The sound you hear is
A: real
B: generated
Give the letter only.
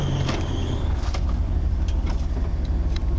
B